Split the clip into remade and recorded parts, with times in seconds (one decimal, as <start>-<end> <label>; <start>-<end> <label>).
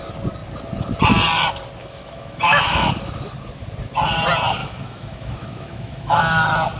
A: 0.0-1.8 recorded; 1.8-2.9 remade; 2.9-4.6 recorded; 4.6-6.2 remade; 6.2-6.8 recorded